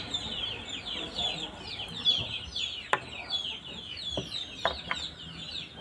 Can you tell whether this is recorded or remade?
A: recorded